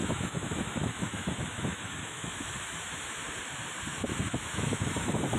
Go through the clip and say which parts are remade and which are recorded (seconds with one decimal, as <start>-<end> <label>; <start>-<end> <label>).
0.0-3.2 remade; 3.2-3.9 recorded; 3.9-5.4 remade